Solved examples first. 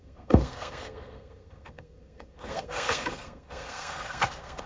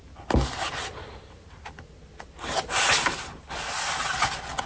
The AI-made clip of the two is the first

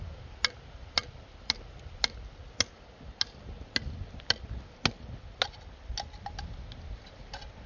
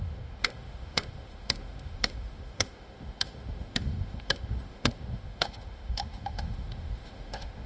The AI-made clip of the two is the second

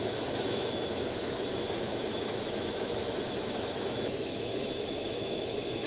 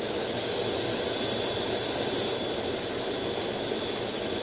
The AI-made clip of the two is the first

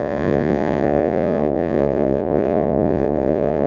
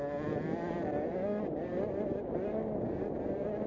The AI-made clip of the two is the first